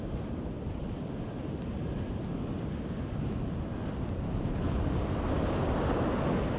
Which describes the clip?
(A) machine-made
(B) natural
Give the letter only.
B